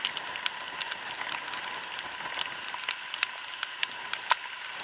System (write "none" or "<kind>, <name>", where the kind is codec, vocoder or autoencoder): none